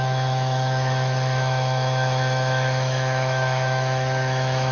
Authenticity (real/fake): fake